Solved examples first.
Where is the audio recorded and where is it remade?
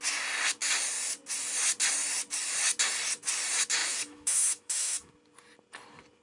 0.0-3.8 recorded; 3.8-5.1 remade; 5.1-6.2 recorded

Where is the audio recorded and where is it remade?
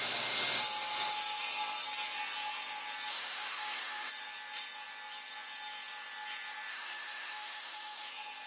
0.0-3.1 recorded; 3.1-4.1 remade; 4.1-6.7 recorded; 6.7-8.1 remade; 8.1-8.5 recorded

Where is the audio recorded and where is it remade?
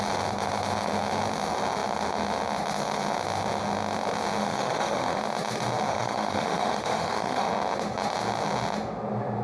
0.0-4.4 recorded; 4.4-5.2 remade; 5.2-5.9 recorded; 5.9-7.5 remade; 7.5-9.4 recorded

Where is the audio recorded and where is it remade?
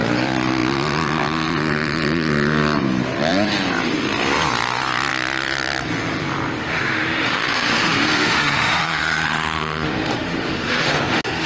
0.0-6.6 recorded; 6.6-11.5 remade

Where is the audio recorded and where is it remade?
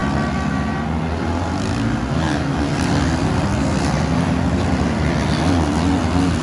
0.0-6.4 recorded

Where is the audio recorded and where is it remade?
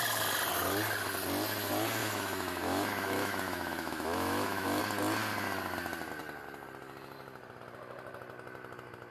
0.0-2.0 recorded; 2.0-4.8 remade; 4.8-9.1 recorded